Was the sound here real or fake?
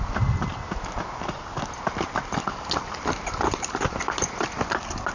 real